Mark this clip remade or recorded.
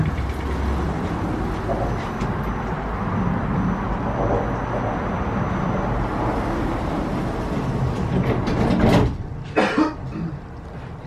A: recorded